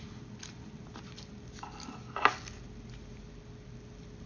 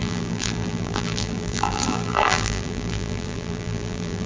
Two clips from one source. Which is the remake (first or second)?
second